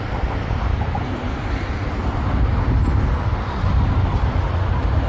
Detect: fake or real real